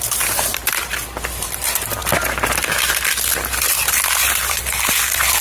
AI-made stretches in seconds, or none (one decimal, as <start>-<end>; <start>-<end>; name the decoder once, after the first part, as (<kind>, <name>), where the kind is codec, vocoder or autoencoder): 0.0-2.0 (vocoder, BigVGAN v2); 4.2-5.4